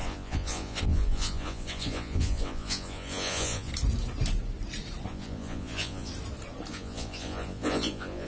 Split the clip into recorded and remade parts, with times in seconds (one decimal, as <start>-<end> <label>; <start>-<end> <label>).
0.0-3.7 remade; 3.7-5.1 recorded; 5.1-6.1 remade; 6.1-6.7 recorded; 6.7-8.3 remade

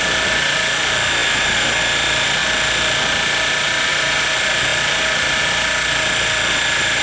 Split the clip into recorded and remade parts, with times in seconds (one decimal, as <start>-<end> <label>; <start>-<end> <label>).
0.0-7.0 recorded

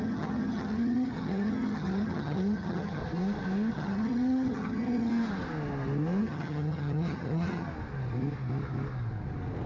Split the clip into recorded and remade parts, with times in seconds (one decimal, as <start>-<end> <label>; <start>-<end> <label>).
0.0-3.0 remade; 3.0-3.7 recorded; 3.7-5.1 remade; 5.1-6.2 recorded; 6.2-7.7 remade; 7.7-9.7 recorded